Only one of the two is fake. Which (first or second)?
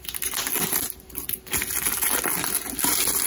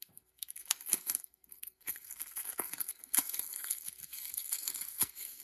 second